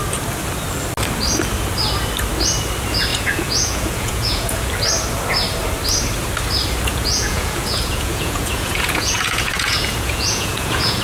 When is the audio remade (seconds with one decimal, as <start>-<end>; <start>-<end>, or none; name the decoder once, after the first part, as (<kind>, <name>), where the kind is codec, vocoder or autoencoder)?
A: 3.1-4.7 (vocoder, Vocos); 6.9-11.0